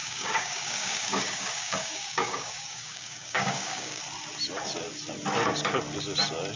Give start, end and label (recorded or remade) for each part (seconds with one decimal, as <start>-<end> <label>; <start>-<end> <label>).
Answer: 0.0-4.0 remade; 4.0-6.6 recorded

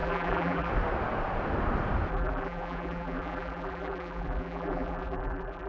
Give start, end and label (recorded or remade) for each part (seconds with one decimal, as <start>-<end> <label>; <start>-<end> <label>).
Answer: 0.0-0.7 remade; 0.7-2.1 recorded; 2.1-5.7 remade